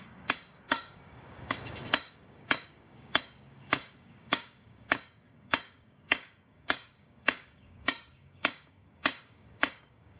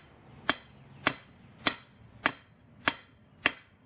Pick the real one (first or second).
second